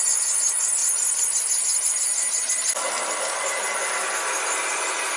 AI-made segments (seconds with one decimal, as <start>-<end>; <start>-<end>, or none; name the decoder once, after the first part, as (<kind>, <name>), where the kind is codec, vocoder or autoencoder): none